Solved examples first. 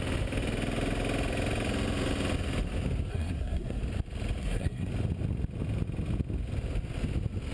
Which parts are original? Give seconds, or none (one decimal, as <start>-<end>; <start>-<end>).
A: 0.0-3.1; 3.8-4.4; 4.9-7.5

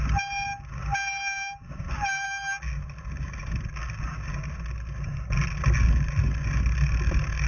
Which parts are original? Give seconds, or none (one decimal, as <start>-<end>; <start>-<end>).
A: 0.0-7.5

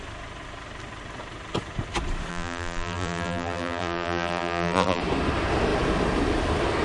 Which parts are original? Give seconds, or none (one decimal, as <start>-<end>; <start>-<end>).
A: 0.0-2.3; 5.0-6.8

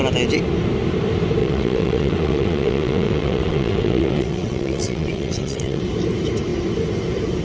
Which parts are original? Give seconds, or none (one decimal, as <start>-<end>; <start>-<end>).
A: 0.0-1.4; 5.8-7.4

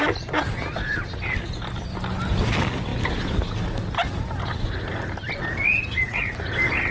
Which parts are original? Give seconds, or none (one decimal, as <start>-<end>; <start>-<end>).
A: 0.0-5.7; 6.3-6.9

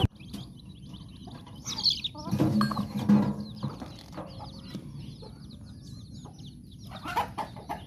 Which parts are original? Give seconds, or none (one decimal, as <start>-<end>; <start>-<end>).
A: 0.0-7.9